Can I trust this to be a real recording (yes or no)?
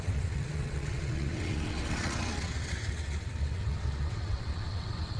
no